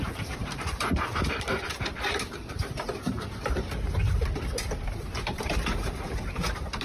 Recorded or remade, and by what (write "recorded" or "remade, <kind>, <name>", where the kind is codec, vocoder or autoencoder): remade, vocoder, BigVGAN v2